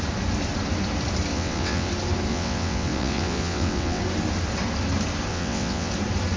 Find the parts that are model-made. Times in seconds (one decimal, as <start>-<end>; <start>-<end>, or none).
1.3-1.9; 2.3-4.0; 5.3-5.9